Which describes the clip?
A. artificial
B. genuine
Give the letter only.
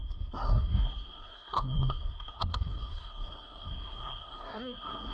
A